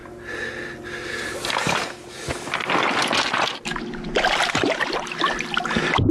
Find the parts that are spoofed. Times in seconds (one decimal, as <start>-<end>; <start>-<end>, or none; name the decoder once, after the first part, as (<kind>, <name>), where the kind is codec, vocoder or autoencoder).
none